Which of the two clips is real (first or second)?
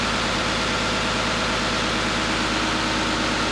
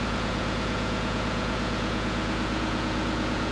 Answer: first